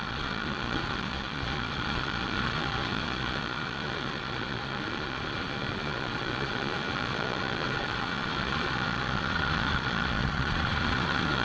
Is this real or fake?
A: fake